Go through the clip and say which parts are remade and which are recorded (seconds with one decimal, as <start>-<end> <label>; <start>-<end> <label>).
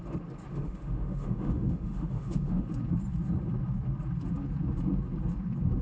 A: 0.0-0.5 recorded; 0.5-2.7 remade; 2.7-5.8 recorded